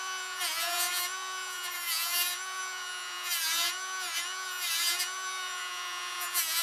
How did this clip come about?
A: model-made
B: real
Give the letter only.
A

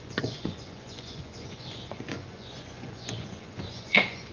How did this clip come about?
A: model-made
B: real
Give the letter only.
A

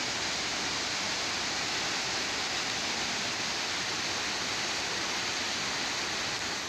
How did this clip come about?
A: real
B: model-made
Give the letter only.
A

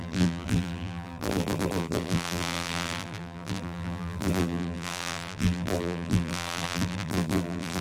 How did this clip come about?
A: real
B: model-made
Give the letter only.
B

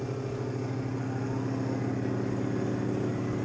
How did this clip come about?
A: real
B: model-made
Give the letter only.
A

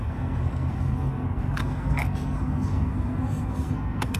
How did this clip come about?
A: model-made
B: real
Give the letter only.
A